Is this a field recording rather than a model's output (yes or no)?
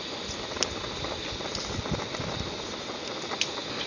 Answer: yes